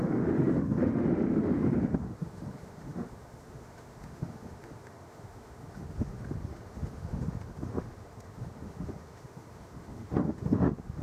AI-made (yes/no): yes